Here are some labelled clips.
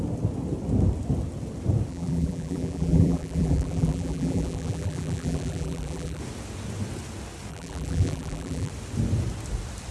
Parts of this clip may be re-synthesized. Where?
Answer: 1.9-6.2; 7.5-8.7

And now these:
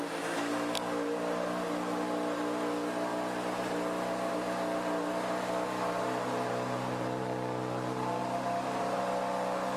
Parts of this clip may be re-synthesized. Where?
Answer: 8.2-9.0